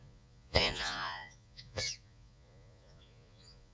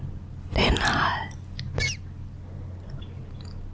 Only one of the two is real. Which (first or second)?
second